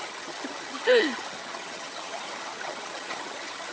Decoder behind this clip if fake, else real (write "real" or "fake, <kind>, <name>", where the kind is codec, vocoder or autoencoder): fake, vocoder, HiFi-GAN